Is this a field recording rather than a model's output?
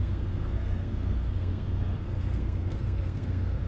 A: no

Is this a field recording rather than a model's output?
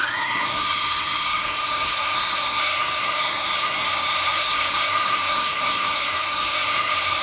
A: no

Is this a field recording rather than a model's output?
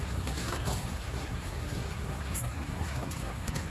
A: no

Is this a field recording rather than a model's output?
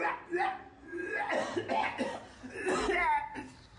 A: yes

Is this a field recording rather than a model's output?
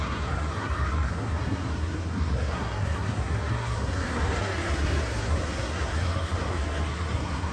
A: no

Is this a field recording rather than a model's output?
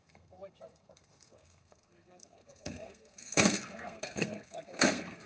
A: no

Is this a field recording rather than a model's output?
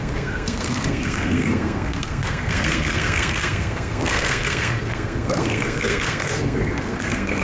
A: no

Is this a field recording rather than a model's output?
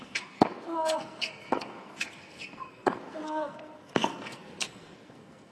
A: no